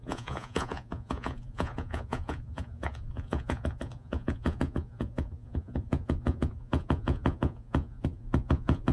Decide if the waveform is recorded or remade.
remade